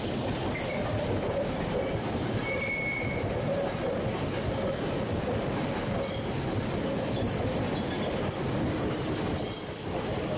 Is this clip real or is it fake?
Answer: real